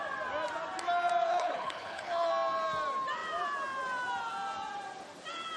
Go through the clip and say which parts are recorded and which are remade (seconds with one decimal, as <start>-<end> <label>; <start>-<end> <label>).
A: 0.0-1.3 recorded; 1.3-2.3 remade; 2.3-5.6 recorded